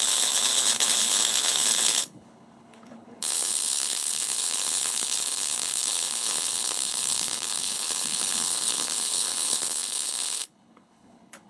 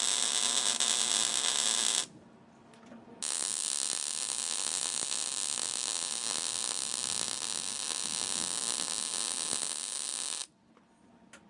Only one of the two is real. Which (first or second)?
second